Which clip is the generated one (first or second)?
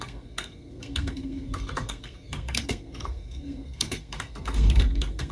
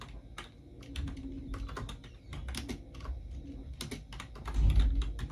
first